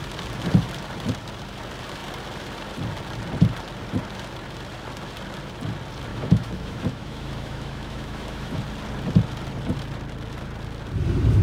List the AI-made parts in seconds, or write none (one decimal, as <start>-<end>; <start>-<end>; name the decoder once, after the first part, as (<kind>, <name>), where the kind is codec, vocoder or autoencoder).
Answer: 6.1-8.6 (autoencoder, DAC-VAE)